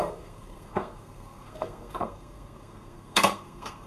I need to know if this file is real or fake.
fake